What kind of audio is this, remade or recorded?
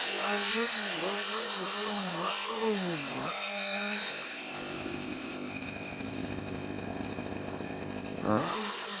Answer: remade